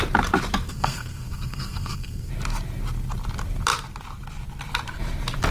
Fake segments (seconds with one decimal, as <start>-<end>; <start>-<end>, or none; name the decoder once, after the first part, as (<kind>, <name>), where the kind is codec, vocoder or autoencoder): 0.7-2.3 (codec, SNAC)